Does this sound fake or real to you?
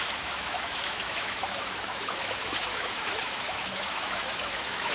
fake